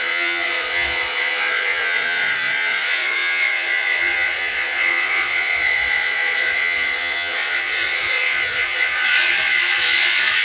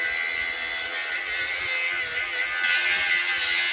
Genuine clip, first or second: second